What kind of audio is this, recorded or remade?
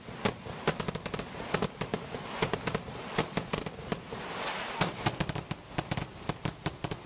recorded